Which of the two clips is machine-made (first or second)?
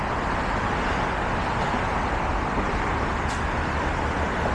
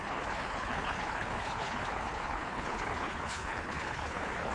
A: second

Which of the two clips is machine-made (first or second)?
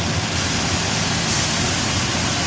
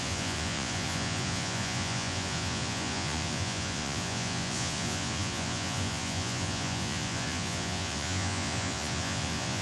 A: second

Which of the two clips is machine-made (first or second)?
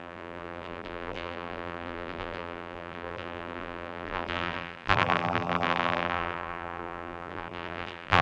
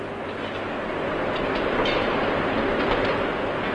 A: first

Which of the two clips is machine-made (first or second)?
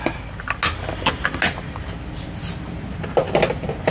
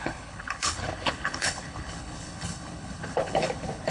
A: second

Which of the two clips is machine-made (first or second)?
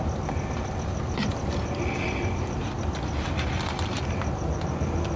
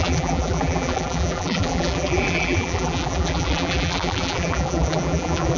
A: second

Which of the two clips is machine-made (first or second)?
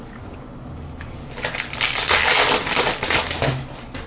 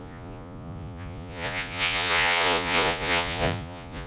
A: second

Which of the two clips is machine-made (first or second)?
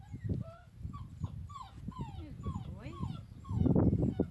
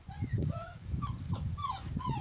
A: second